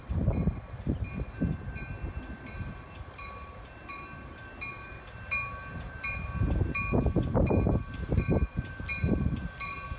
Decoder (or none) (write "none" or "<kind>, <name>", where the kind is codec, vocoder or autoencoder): none